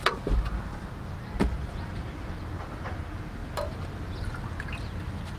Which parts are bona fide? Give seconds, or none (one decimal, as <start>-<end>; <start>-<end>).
0.0-1.5; 2.4-5.4